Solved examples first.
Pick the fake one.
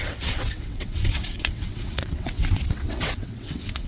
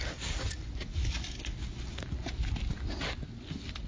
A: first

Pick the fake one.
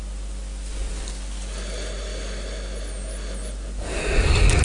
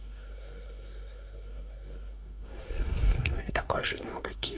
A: second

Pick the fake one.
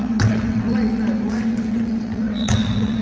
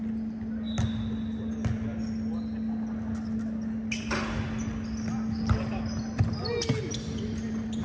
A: first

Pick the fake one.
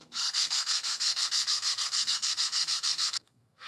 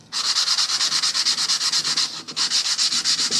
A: first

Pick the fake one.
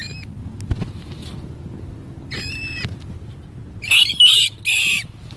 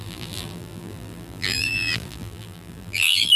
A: second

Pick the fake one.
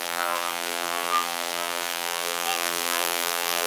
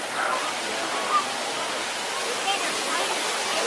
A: first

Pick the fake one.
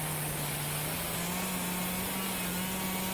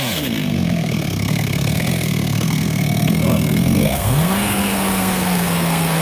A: second